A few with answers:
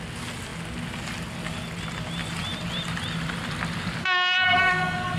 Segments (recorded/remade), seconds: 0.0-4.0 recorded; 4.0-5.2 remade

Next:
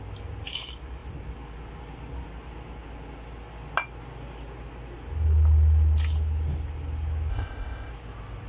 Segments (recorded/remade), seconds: 0.0-7.3 recorded; 7.3-7.9 remade; 7.9-8.5 recorded